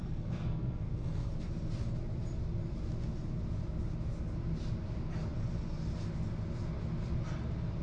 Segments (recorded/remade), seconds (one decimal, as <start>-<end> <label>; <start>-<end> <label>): 0.0-1.3 remade; 1.3-7.8 recorded